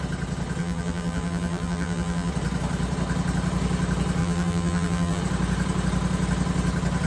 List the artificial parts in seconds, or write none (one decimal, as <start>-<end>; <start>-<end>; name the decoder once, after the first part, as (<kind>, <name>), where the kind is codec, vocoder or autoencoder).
0.6-2.3 (vocoder, BigVGAN v2); 4.2-5.2